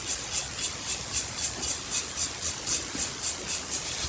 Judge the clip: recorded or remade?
remade